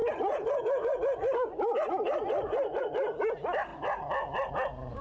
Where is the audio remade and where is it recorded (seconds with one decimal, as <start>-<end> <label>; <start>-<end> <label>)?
0.0-5.0 recorded